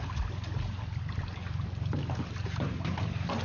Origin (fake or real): real